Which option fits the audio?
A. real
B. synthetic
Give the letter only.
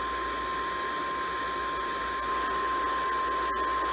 A